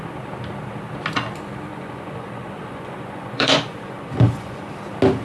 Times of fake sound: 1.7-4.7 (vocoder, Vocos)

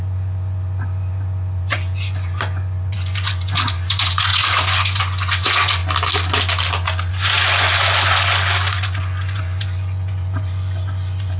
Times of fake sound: 0.0-5.8 (vocoder, Vocos); 7.1-11.4

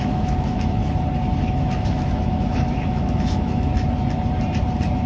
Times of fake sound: 0.0-0.8 (autoencoder, DAC-VAE); 1.4-3.7

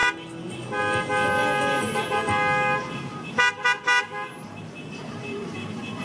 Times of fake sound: none

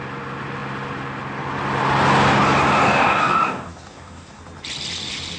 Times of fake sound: 2.8-4.4 (codec, DAC)

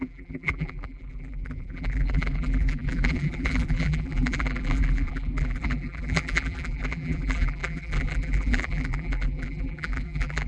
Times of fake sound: 0.0-10.5 (vocoder, BigVGAN v2)

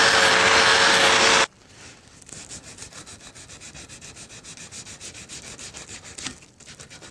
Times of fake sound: none

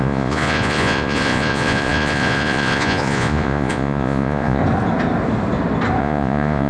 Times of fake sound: 0.0-4.6 (vocoder, Vocos); 6.0-6.7